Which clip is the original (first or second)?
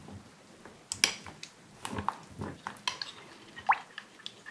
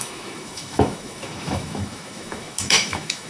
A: first